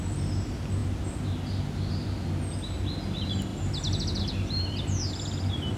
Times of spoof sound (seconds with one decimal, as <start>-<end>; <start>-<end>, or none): none